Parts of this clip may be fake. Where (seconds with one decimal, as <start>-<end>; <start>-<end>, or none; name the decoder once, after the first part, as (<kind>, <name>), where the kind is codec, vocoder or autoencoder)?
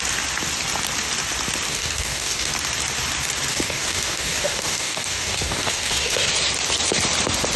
1.7-2.5 (codec, DAC); 3.5-6.3